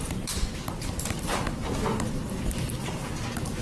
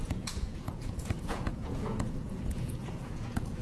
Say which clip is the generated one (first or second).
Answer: second